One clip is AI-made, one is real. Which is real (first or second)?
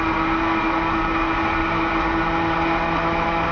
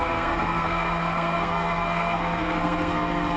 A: first